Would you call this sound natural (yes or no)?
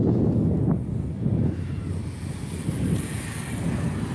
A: yes